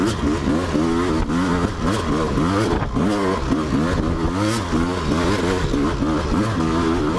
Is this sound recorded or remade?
recorded